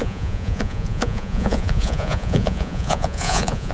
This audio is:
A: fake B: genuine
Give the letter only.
A